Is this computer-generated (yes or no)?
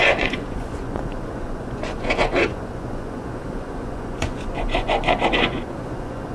yes